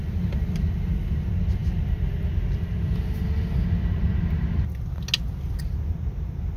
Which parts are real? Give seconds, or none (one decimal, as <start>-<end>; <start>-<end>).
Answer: 0.0-6.6